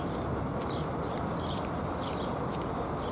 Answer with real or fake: real